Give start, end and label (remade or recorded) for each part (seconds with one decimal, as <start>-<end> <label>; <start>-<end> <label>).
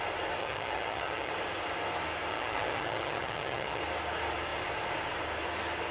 0.0-0.4 recorded; 0.4-1.3 remade; 1.3-2.3 recorded; 2.3-3.8 remade; 3.8-5.9 recorded